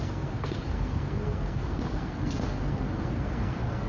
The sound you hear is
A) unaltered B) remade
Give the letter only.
B